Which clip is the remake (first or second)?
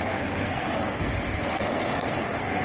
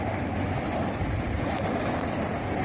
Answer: first